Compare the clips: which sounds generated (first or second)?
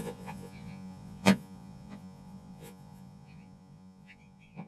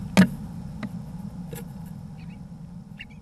first